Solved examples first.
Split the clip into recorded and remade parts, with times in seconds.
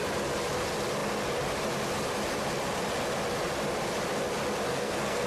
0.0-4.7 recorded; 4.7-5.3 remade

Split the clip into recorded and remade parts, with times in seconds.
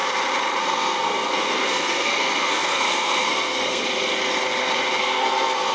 0.0-0.6 recorded; 0.6-3.8 remade; 3.8-5.0 recorded; 5.0-5.7 remade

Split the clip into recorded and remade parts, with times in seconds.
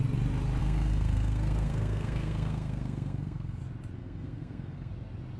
0.0-0.6 recorded; 0.6-3.6 remade; 3.6-4.0 recorded; 4.0-4.9 remade; 4.9-5.4 recorded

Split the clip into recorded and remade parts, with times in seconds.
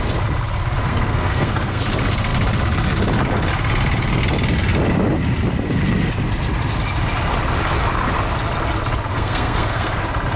0.0-0.8 recorded; 0.8-1.8 remade; 1.8-9.1 recorded; 9.1-10.0 remade; 10.0-10.4 recorded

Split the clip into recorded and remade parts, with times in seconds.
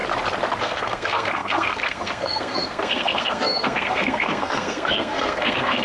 0.0-0.6 recorded; 0.6-5.8 remade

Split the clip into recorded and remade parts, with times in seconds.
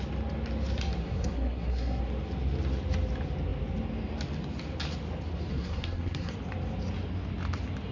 0.0-1.0 recorded; 1.0-2.0 remade; 2.0-5.5 recorded; 5.5-6.3 remade; 6.3-7.9 recorded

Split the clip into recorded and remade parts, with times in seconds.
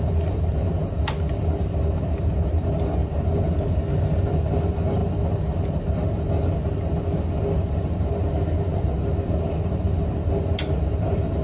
0.0-11.4 recorded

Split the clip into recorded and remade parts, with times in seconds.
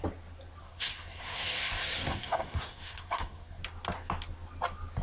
0.0-0.6 recorded; 0.6-3.6 remade; 3.6-5.0 recorded